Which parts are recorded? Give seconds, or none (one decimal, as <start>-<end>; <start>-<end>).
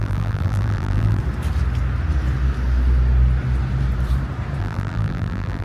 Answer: 1.2-4.6